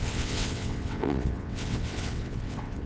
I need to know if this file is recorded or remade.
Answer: remade